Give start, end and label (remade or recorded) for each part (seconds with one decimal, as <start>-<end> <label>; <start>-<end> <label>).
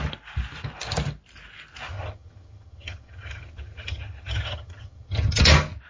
0.0-1.9 recorded; 1.9-5.4 remade; 5.4-5.9 recorded